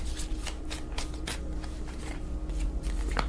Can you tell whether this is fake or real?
real